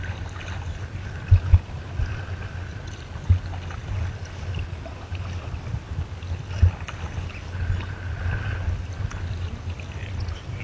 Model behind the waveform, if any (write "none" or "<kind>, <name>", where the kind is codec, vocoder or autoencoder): none